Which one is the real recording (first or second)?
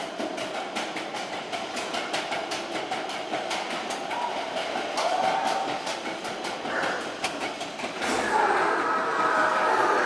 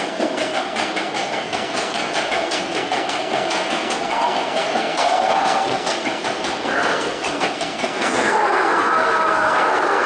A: first